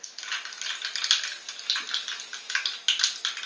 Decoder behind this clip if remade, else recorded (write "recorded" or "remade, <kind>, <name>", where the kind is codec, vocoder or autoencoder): recorded